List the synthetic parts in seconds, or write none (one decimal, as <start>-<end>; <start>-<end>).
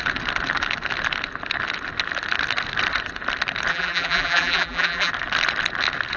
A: 3.7-5.1